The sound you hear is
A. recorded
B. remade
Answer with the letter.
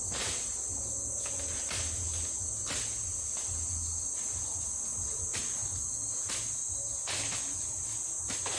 A